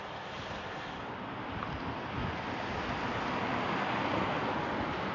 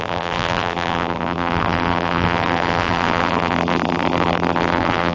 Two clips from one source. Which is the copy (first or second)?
second